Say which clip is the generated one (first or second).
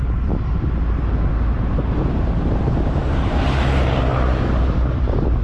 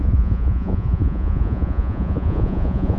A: second